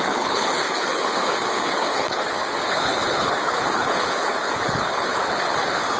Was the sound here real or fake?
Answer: fake